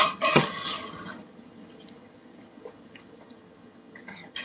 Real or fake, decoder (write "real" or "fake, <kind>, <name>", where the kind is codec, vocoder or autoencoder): fake, vocoder, HiFi-GAN